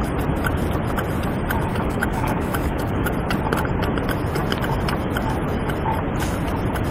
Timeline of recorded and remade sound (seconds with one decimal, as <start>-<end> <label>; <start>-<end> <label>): 0.0-1.7 recorded; 1.7-3.1 remade; 3.1-6.9 recorded